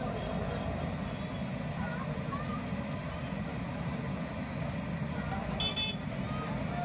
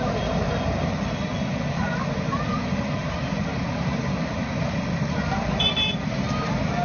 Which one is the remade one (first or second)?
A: second